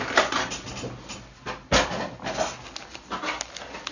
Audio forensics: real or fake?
real